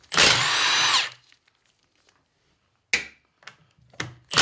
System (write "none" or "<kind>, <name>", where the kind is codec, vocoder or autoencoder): none